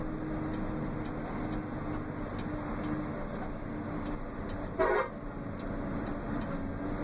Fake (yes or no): no